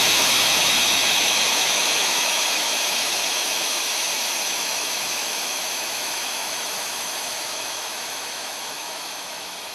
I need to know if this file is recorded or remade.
remade